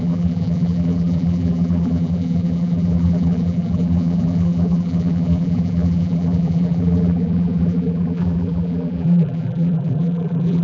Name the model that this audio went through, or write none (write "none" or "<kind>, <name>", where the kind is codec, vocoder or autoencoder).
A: vocoder, BigVGAN v2